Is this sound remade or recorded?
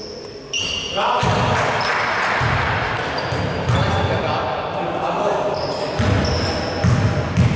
recorded